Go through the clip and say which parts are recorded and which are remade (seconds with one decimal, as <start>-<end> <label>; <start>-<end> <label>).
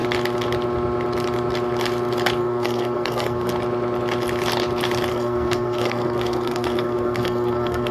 0.0-2.4 recorded; 2.4-3.5 remade; 3.5-5.1 recorded; 5.1-7.9 remade